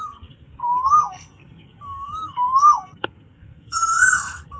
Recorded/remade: remade